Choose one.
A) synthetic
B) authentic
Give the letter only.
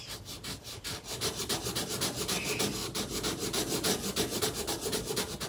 B